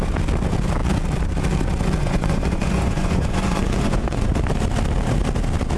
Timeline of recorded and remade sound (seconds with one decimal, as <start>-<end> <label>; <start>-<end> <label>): 0.0-2.0 recorded; 2.0-4.3 remade; 4.3-5.8 recorded